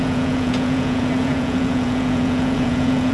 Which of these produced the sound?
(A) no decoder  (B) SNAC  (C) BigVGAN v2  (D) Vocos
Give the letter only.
D